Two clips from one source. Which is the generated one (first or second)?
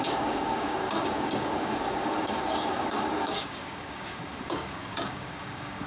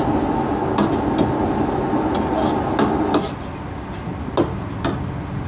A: first